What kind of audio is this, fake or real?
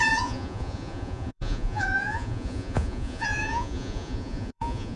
fake